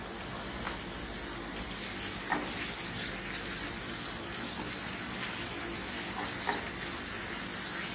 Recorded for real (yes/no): yes